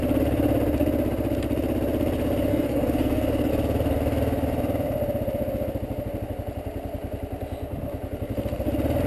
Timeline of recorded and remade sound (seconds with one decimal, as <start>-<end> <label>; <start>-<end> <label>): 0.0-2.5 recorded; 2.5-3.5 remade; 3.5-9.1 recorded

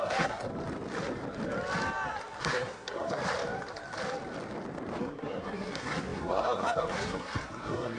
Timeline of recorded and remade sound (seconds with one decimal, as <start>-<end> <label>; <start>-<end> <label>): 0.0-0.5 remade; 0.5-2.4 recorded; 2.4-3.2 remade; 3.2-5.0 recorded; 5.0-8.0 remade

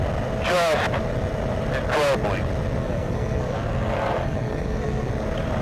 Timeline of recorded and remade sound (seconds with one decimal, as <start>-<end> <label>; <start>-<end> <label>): 0.0-2.8 recorded; 2.8-5.1 remade; 5.1-5.6 recorded

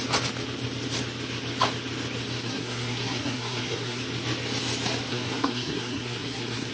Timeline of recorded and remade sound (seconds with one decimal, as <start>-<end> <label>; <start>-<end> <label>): 0.0-2.4 recorded; 2.4-4.0 remade; 4.0-5.1 recorded; 5.1-6.7 remade

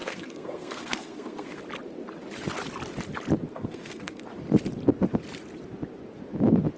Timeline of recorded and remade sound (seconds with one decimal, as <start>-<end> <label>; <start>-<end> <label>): 0.0-1.6 remade; 1.6-3.5 recorded; 3.5-4.2 remade; 4.2-6.8 recorded

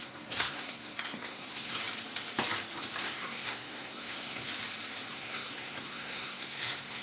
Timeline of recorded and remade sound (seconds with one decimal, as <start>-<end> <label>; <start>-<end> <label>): 0.0-1.8 remade; 1.8-3.0 recorded; 3.0-4.4 remade; 4.4-5.1 recorded; 5.1-7.0 remade

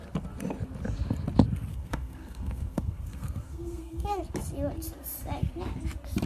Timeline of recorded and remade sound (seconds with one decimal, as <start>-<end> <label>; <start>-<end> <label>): 0.0-1.7 recorded; 1.7-4.2 remade; 4.2-6.3 recorded

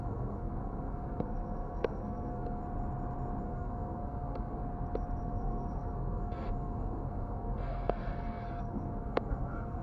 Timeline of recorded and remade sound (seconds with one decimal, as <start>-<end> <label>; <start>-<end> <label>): 0.0-2.6 remade; 2.6-3.4 recorded; 3.4-4.6 remade; 4.6-5.2 recorded; 5.2-9.8 remade